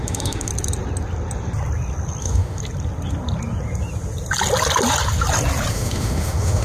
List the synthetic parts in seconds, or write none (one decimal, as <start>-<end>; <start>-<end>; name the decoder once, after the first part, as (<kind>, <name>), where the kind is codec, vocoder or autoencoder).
0.0-0.5 (autoencoder, DAC-VAE); 2.2-2.6; 5.7-6.6